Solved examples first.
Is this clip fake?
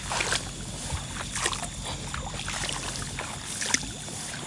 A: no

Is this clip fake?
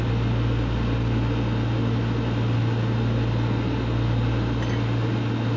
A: no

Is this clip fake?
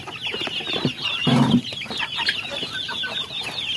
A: no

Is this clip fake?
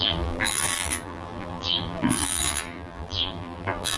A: yes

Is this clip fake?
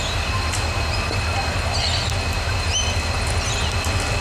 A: no